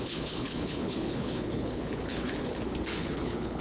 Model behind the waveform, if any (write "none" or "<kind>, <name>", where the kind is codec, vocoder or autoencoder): codec, HILCodec